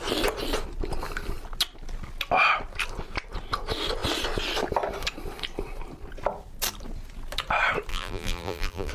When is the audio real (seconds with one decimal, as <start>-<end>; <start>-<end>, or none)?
0.0-7.9